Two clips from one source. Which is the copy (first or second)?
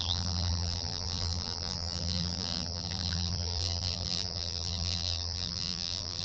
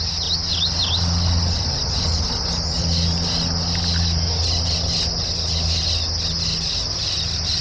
first